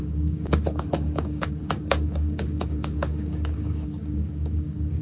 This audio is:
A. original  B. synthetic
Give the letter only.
B